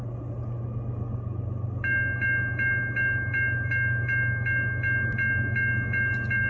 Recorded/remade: recorded